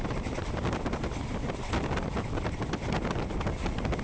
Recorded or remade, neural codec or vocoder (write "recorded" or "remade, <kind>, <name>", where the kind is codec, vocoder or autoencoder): recorded